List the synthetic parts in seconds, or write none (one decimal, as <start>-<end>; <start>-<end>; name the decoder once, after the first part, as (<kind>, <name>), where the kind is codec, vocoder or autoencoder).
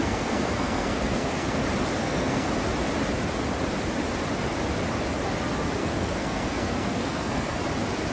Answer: 0.0-1.6 (codec, SNAC); 2.0-2.5; 5.8-7.6